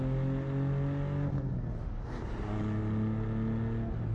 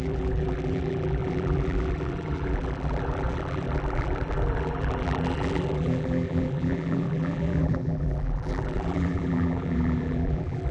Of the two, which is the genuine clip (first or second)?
first